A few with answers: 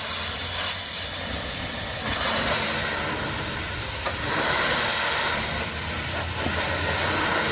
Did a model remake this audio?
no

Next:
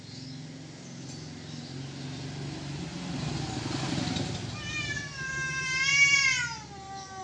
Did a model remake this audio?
no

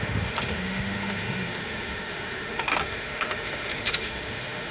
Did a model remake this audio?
yes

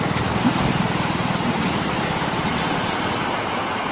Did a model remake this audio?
no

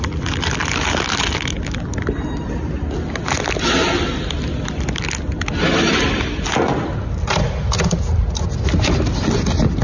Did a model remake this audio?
no